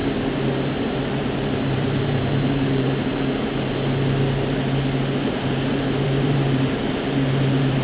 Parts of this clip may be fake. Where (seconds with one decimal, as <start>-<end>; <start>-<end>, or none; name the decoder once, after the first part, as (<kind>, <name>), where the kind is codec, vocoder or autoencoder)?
1.0-3.1 (vocoder, BigVGAN v2); 5.2-7.8